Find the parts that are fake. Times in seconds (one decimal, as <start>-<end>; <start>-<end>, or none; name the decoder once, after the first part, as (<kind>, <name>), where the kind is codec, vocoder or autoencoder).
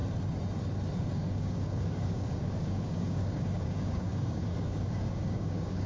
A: 1.0-5.9 (codec, DAC)